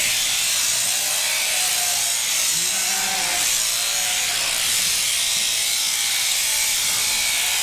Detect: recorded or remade recorded